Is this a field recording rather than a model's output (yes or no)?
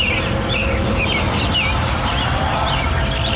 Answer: yes